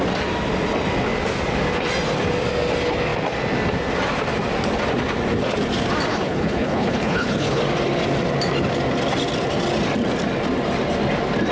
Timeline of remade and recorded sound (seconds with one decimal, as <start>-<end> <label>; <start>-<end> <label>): 0.0-6.1 recorded; 6.1-7.6 remade; 7.6-11.5 recorded